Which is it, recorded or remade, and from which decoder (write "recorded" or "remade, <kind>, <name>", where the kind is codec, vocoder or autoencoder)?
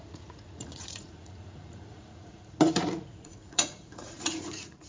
remade, vocoder, Vocos